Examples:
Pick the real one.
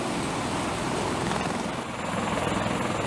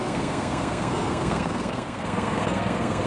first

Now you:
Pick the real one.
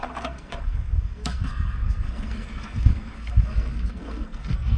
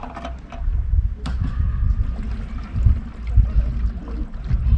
second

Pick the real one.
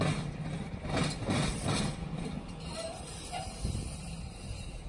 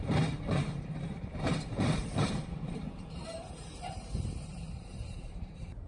first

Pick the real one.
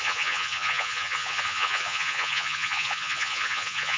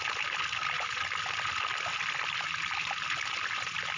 second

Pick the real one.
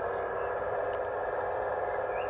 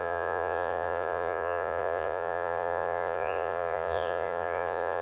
first